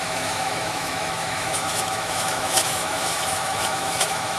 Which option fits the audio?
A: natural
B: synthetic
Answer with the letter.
B